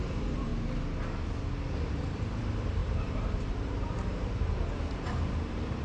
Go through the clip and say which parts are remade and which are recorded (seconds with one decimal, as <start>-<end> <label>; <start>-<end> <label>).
0.0-0.5 remade; 0.5-1.9 recorded; 1.9-5.8 remade